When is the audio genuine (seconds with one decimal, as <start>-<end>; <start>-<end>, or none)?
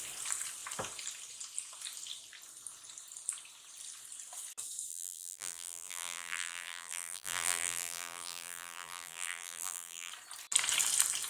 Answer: 0.0-4.9; 10.1-11.3